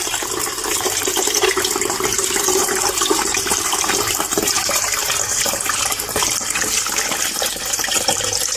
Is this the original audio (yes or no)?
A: no